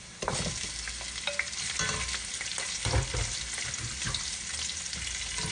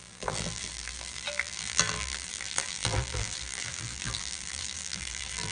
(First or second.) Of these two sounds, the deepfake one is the second